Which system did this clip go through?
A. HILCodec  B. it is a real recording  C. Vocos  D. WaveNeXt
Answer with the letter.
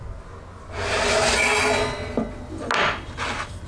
B